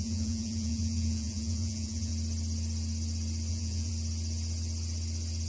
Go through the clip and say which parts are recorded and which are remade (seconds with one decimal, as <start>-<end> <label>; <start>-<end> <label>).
0.0-2.1 remade; 2.1-3.5 recorded; 3.5-3.9 remade; 3.9-5.5 recorded